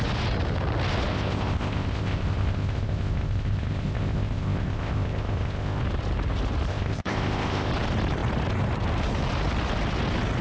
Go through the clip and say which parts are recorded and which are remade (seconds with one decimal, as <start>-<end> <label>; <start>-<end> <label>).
0.0-1.1 recorded; 1.1-5.8 remade; 5.8-6.7 recorded; 6.7-7.7 remade; 7.7-10.4 recorded